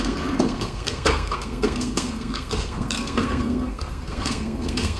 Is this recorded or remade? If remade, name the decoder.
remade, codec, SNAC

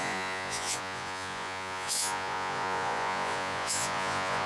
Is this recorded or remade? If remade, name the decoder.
remade, vocoder, Vocos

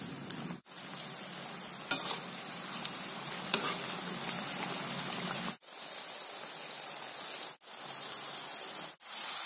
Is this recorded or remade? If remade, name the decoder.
recorded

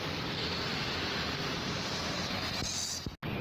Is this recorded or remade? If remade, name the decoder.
recorded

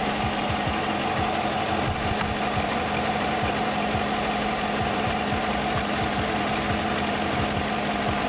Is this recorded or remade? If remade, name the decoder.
recorded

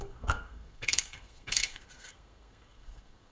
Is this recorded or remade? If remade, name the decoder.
remade, codec, SNAC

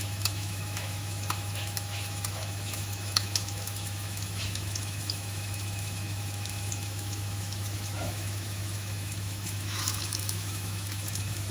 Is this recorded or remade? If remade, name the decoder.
remade, autoencoder, DAC-VAE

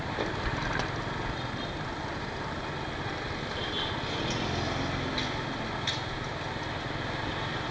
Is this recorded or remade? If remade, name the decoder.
recorded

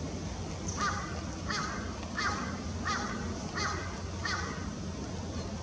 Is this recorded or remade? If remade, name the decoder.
recorded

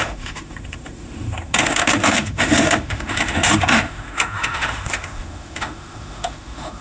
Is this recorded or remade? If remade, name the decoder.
remade, autoencoder, DAC-VAE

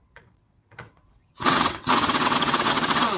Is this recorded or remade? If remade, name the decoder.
remade, vocoder, WaveNeXt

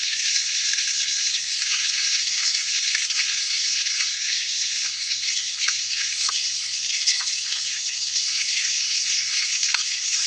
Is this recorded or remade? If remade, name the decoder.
remade, codec, SNAC